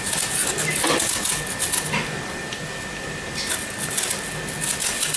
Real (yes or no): yes